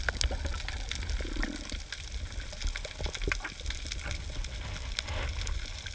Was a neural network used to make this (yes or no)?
no